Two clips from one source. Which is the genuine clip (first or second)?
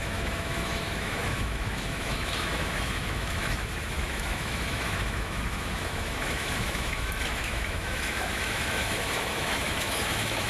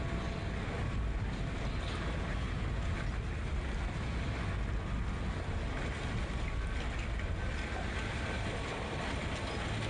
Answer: second